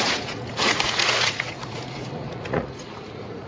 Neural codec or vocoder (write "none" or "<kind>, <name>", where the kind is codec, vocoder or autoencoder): vocoder, Vocos